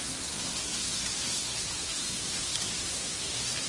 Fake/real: fake